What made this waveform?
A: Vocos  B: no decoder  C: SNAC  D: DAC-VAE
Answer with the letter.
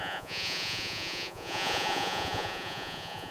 A